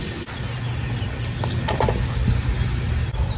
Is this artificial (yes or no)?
no